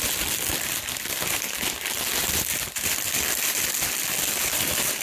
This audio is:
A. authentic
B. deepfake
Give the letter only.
A